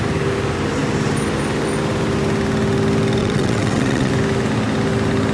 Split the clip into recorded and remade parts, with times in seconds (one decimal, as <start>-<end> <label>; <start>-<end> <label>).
0.0-3.2 recorded; 3.2-4.1 remade; 4.1-5.3 recorded